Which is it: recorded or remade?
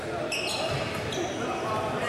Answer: recorded